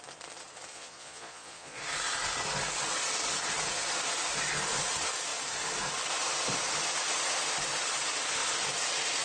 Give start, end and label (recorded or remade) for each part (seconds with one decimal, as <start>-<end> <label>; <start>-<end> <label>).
0.0-0.7 recorded; 0.7-1.8 remade; 1.8-9.2 recorded